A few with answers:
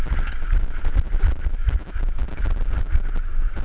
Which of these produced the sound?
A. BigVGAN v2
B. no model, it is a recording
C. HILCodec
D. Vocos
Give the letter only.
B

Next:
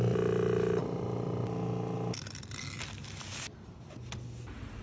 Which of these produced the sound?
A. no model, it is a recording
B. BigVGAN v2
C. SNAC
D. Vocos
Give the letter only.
A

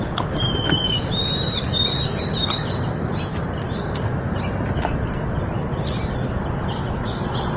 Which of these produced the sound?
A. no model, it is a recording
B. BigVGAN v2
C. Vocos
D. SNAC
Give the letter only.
A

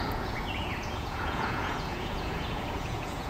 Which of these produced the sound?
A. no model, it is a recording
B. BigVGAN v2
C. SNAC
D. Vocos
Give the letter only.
D